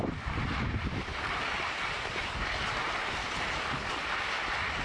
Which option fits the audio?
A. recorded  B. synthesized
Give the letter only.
A